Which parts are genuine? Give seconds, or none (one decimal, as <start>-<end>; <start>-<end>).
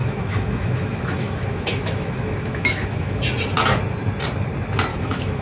3.2-4.9